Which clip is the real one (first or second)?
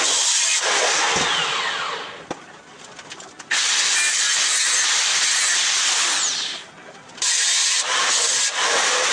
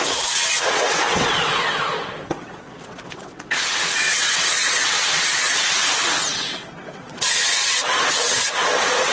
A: first